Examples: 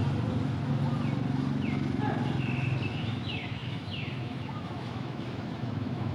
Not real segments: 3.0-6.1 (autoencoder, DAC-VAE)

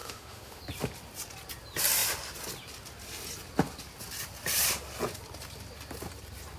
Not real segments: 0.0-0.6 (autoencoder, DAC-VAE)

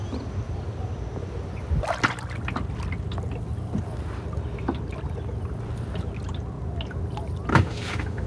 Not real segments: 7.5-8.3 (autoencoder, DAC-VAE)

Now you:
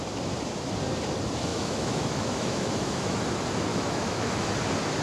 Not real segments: 1.5-3.2 (autoencoder, DAC-VAE); 3.7-4.5

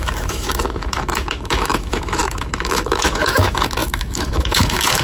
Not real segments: 0.0-5.0 (autoencoder, DAC-VAE)

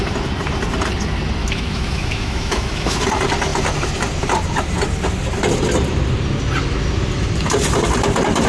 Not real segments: 1.4-3.0 (autoencoder, DAC-VAE)